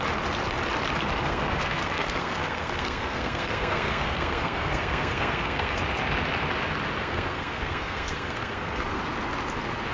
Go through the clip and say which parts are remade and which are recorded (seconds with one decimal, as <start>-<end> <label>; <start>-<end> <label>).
0.0-1.2 recorded; 1.2-5.8 remade; 5.8-7.0 recorded; 7.0-9.0 remade; 9.0-9.9 recorded